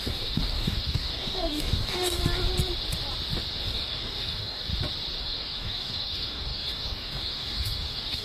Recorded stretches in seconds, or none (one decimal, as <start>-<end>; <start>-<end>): 2.2-3.6; 4.7-5.2